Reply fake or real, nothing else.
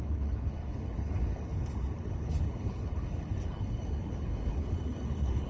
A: fake